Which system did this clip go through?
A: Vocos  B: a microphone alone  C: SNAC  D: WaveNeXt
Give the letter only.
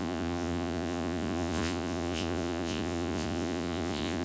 A